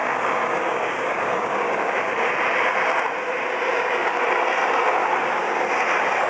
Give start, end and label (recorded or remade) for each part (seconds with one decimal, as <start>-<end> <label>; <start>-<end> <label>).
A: 0.0-2.1 remade; 2.1-3.7 recorded; 3.7-4.2 remade; 4.2-5.0 recorded; 5.0-5.6 remade; 5.6-6.3 recorded